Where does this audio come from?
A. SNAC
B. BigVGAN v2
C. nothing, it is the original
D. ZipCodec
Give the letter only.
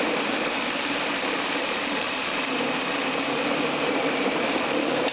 B